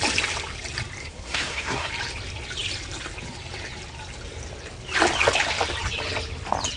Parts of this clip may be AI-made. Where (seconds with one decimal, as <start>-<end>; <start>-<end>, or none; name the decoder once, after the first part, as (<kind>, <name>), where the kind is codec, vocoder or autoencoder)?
1.0-1.9 (codec, SNAC)